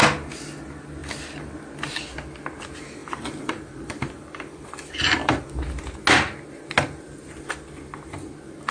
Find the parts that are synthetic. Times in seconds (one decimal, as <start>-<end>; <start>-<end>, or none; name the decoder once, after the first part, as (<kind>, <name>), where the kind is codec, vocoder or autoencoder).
3.0-5.6 (vocoder, BigVGAN v2)